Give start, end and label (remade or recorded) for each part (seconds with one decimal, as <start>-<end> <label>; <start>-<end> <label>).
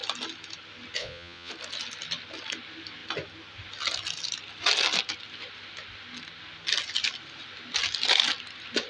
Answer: 0.0-1.0 recorded; 1.0-1.5 remade; 1.5-8.9 recorded